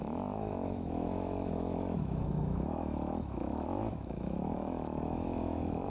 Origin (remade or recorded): remade